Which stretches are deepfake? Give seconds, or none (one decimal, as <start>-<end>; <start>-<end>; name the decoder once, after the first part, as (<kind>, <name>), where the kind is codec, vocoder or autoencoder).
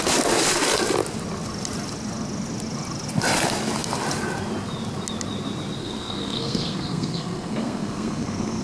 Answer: 5.8-8.6 (codec, SNAC)